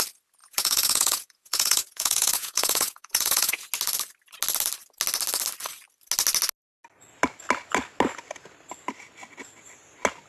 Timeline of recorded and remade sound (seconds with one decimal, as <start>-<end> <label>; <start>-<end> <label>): 0.0-0.4 recorded; 0.4-3.7 remade; 3.7-10.3 recorded